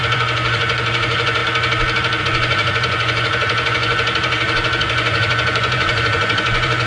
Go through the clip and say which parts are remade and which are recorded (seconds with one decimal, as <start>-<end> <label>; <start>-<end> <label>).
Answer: 0.0-1.4 remade; 1.4-2.2 recorded; 2.2-6.9 remade